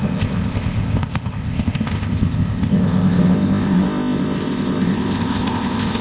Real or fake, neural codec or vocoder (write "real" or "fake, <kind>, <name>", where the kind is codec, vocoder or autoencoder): fake, codec, ZipCodec